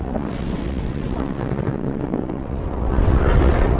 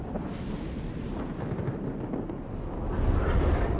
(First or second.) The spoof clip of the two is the first